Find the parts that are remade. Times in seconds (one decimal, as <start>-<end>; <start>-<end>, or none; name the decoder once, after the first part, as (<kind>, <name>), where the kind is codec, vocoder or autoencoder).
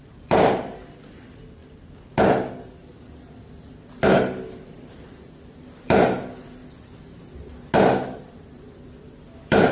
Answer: 0.0-1.6 (vocoder, BigVGAN v2); 3.9-6.6; 8.2-9.7